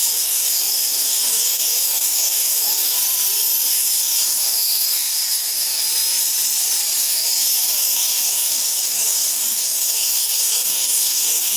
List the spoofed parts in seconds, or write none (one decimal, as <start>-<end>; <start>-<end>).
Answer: 0.0-3.0; 3.7-5.8; 7.0-11.6